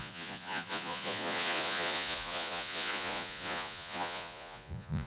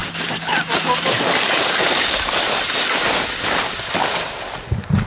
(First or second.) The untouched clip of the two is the second